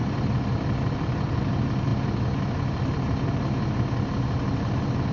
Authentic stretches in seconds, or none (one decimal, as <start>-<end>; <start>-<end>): 1.4-5.1